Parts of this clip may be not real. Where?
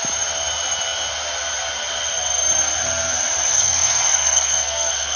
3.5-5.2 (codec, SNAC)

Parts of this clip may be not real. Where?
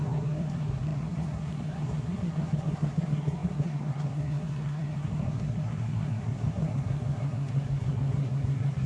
0.0-8.9 (codec, SNAC)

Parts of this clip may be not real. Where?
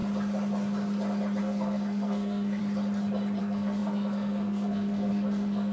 1.4-2.6 (codec, SNAC); 3.4-5.7